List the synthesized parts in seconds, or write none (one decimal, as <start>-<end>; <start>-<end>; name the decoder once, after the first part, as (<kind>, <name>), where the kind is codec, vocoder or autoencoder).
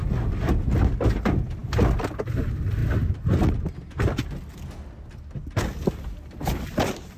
none